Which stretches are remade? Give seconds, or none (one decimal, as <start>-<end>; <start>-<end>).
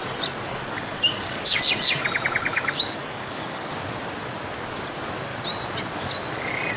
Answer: 0.5-1.6; 2.5-3.7